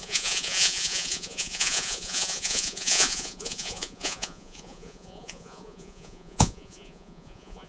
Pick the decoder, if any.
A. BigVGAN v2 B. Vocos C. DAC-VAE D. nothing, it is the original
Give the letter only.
B